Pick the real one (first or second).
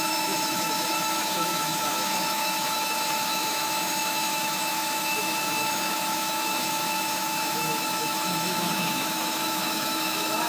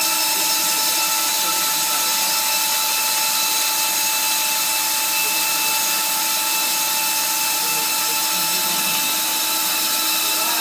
second